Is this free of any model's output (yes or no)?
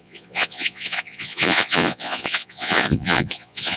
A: no